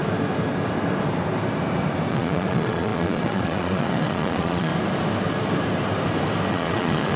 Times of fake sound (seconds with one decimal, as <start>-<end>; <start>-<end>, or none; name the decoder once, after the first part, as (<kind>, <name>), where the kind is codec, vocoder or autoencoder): 2.1-4.7 (vocoder, Vocos); 6.5-7.2